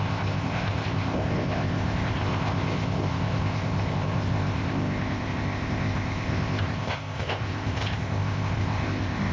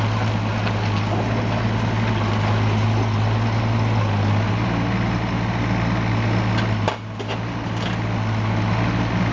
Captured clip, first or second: second